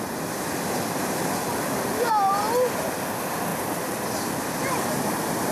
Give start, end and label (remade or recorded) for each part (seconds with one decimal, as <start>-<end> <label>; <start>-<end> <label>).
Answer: 0.0-1.5 recorded; 1.5-2.1 remade; 2.1-3.5 recorded; 3.5-4.9 remade; 4.9-5.5 recorded

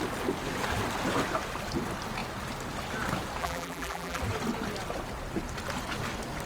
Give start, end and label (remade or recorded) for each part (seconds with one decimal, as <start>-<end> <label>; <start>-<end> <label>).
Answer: 0.0-3.4 recorded; 3.4-4.2 remade; 4.2-6.5 recorded

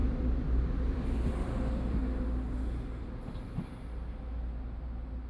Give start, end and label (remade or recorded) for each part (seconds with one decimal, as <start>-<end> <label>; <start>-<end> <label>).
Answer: 0.0-0.5 recorded; 0.5-2.0 remade; 2.0-5.3 recorded

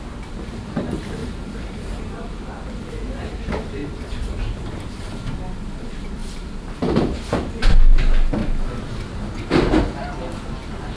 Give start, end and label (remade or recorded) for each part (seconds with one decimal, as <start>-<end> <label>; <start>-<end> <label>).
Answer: 0.0-1.2 recorded; 1.2-2.8 remade; 2.8-3.8 recorded; 3.8-5.0 remade; 5.0-6.2 recorded; 6.2-7.7 remade; 7.7-11.0 recorded